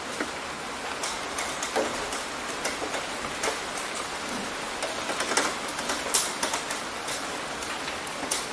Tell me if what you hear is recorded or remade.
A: recorded